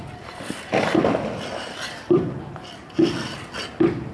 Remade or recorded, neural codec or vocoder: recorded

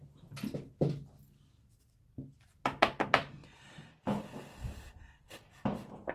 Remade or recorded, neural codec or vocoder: recorded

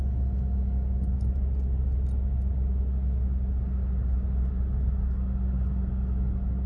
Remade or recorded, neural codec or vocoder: recorded